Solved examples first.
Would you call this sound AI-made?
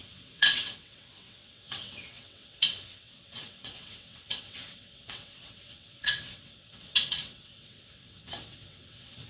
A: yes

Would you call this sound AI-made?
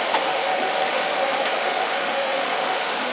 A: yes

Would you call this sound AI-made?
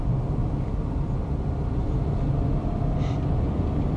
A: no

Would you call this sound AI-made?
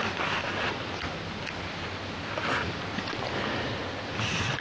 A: no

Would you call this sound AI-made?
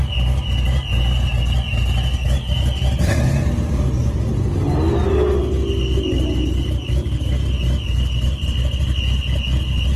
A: no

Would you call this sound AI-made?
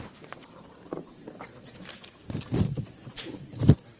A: yes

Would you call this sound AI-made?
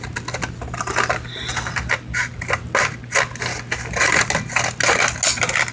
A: no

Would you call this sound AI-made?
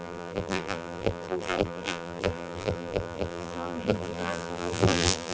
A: yes